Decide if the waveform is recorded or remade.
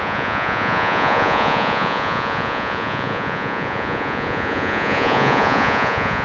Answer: remade